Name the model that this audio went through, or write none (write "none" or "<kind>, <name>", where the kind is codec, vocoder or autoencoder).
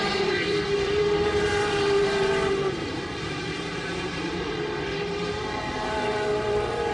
vocoder, BigVGAN v2